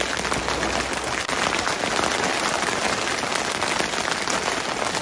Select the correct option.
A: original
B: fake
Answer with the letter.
A